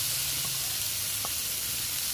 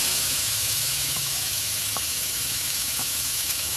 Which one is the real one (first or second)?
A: first